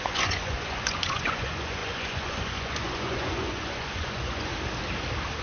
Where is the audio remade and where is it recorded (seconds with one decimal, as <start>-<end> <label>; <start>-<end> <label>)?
0.0-4.5 remade; 4.5-5.4 recorded

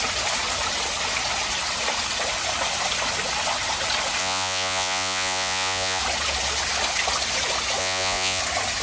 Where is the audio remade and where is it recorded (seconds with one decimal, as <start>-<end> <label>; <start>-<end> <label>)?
0.0-4.2 recorded; 4.2-6.0 remade; 6.0-7.8 recorded; 7.8-8.4 remade; 8.4-8.8 recorded

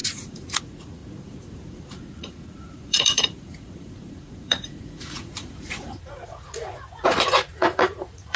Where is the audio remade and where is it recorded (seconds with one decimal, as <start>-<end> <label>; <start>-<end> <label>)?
0.0-8.4 remade

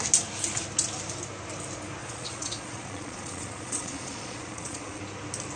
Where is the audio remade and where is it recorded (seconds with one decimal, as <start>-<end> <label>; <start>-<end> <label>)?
0.0-2.0 recorded; 2.0-5.0 remade; 5.0-5.6 recorded

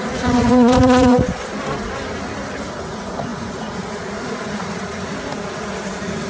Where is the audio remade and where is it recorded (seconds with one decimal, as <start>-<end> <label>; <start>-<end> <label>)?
0.0-1.5 remade; 1.5-2.6 recorded; 2.6-6.3 remade

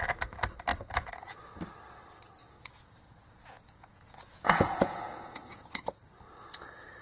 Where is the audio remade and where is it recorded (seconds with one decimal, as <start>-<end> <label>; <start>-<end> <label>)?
0.0-0.7 recorded; 0.7-1.4 remade; 1.4-2.4 recorded; 2.4-5.9 remade; 5.9-7.0 recorded

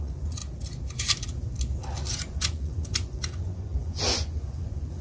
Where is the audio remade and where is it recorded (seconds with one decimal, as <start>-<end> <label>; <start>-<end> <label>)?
0.0-0.4 remade; 0.4-2.1 recorded; 2.1-5.0 remade

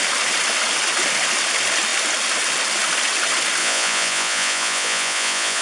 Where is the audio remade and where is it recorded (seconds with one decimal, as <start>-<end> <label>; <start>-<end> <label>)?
0.0-3.6 recorded; 3.6-5.6 remade